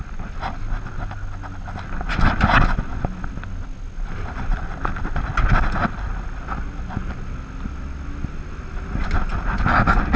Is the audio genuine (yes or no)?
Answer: yes